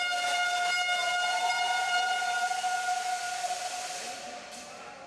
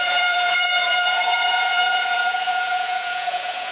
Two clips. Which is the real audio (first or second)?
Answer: first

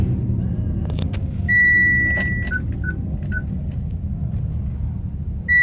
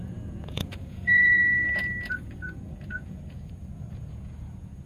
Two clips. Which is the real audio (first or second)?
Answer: first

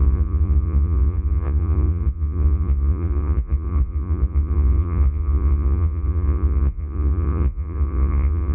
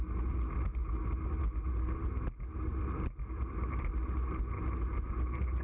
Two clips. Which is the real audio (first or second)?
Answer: second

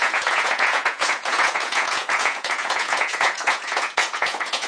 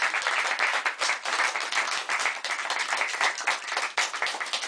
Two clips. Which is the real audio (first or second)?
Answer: second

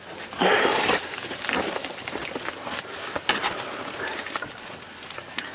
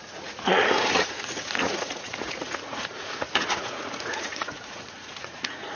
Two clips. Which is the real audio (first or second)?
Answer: first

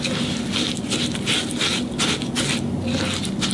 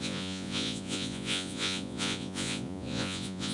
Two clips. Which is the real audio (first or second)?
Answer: first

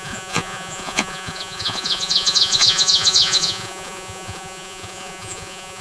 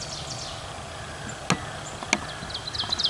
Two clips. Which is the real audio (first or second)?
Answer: second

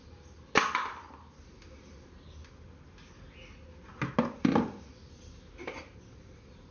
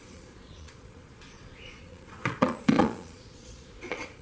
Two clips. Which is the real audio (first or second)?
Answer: first